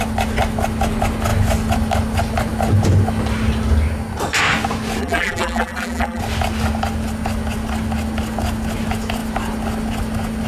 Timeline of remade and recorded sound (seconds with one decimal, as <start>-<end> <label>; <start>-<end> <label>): 0.0-5.0 recorded; 5.0-6.2 remade; 6.2-10.5 recorded